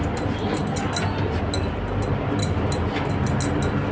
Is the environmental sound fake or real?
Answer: real